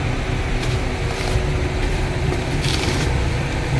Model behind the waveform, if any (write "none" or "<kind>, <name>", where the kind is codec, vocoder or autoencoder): vocoder, BigVGAN v2